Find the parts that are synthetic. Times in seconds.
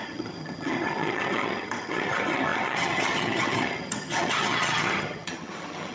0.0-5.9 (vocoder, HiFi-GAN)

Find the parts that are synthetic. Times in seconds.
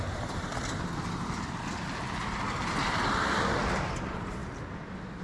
0.0-0.5 (vocoder, BigVGAN v2); 3.6-4.4